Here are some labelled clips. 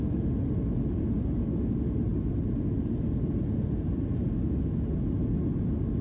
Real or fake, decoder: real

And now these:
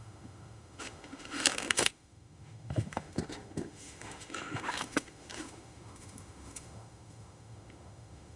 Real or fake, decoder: fake, autoencoder, DAC-VAE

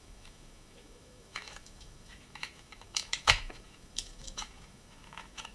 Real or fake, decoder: fake, autoencoder, DAC-VAE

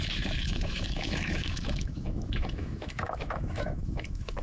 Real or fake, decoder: fake, autoencoder, DAC-VAE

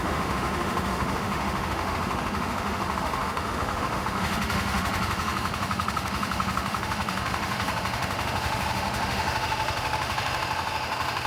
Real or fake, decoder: fake, autoencoder, DAC-VAE